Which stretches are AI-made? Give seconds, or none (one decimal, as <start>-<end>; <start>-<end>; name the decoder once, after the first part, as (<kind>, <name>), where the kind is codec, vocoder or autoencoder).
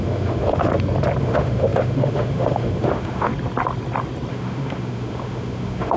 0.0-0.7 (autoencoder, DAC-VAE); 1.2-3.3; 4.3-6.0